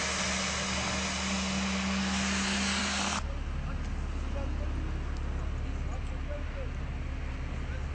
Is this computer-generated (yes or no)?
no